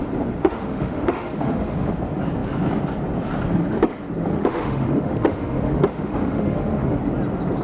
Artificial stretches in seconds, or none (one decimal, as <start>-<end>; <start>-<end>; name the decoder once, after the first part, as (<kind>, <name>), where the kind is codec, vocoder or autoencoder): 0.4-2.0 (autoencoder, DAC-VAE); 4.3-7.0